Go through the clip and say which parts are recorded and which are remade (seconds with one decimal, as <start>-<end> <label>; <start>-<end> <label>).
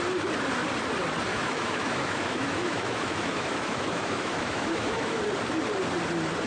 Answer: 0.0-1.3 recorded; 1.3-5.2 remade; 5.2-6.5 recorded